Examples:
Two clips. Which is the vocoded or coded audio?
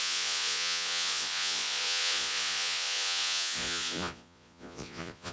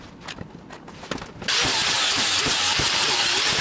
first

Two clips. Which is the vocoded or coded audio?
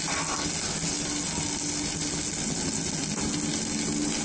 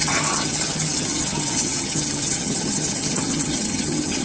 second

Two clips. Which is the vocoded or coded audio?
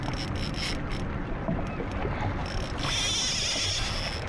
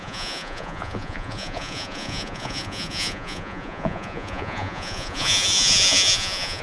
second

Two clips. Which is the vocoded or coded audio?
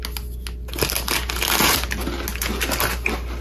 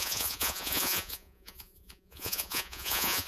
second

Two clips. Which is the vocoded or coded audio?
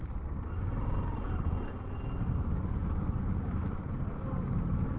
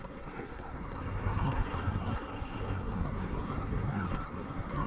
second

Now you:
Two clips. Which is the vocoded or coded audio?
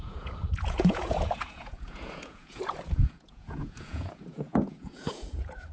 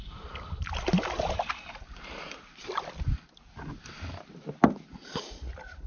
first